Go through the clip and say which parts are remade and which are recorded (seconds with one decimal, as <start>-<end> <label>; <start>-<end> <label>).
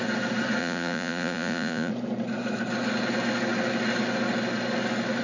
0.0-0.6 recorded; 0.6-1.9 remade; 1.9-5.2 recorded